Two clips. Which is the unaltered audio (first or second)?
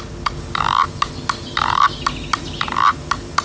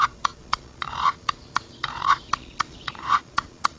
first